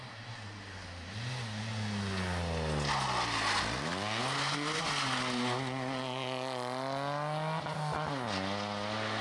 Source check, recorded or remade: recorded